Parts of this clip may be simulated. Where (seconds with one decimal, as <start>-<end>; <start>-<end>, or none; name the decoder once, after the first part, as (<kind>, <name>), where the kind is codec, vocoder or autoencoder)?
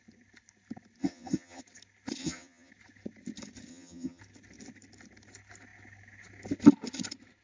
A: 1.0-1.6 (vocoder, HiFi-GAN); 2.2-2.7; 3.7-4.2